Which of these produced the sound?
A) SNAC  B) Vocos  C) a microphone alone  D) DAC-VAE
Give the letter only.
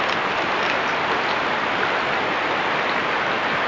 C